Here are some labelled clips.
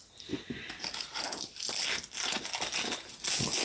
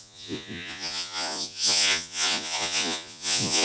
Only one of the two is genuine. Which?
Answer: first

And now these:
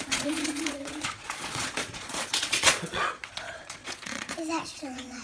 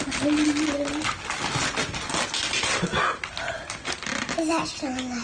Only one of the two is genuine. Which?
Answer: second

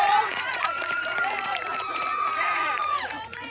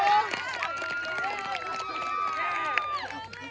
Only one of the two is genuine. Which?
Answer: second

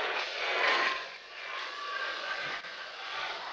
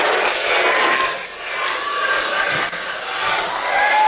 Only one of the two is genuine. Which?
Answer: second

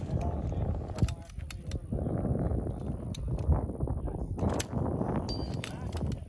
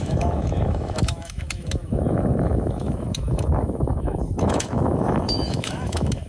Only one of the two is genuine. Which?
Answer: first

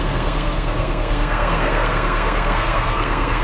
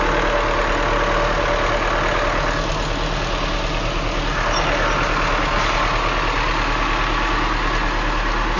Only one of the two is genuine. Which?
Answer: second